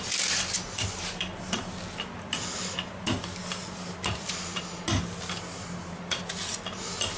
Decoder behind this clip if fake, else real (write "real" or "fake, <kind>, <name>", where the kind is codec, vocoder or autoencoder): real